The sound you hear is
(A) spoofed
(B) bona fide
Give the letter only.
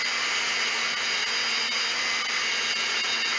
B